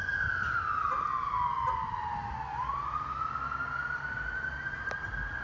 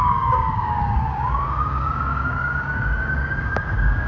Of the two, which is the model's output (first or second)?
second